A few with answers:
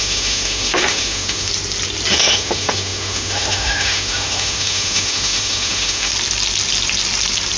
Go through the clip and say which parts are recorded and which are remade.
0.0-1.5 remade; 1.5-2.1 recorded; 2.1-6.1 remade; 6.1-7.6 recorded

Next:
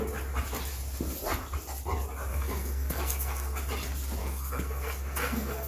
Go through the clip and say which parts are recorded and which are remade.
0.0-2.3 recorded; 2.3-3.6 remade; 3.6-4.2 recorded; 4.2-5.7 remade

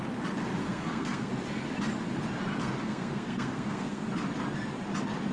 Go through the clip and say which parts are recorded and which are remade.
0.0-0.6 recorded; 0.6-1.3 remade; 1.3-2.6 recorded; 2.6-4.1 remade; 4.1-5.3 recorded

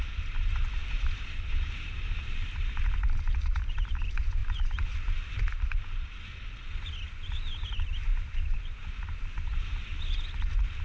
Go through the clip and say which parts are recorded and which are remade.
0.0-0.8 recorded; 0.8-4.0 remade; 4.0-4.4 recorded; 4.4-6.1 remade; 6.1-8.1 recorded; 8.1-10.0 remade; 10.0-10.8 recorded